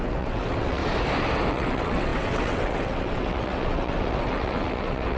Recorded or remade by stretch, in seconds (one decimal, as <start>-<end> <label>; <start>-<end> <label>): 0.0-0.8 remade; 0.8-1.5 recorded; 1.5-5.2 remade